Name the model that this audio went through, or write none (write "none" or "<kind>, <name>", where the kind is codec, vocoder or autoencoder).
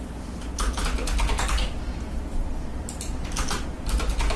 none